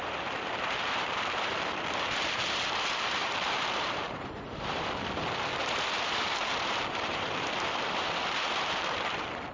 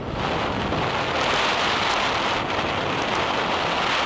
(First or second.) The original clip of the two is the second